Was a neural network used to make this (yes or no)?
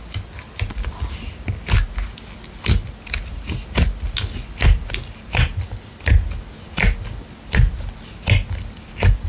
no